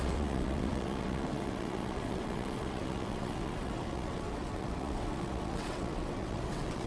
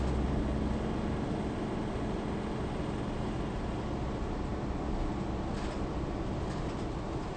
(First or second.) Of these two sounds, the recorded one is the second